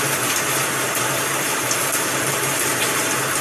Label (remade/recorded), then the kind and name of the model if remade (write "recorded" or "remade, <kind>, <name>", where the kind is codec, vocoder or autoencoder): recorded